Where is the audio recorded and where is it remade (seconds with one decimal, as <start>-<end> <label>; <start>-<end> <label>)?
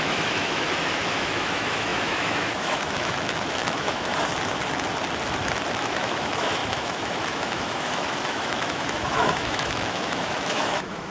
0.0-4.1 remade; 4.1-5.7 recorded; 5.7-11.1 remade